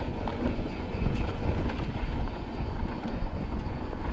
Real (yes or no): no